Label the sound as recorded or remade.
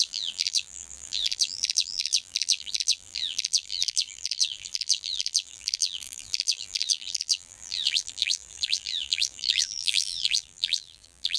remade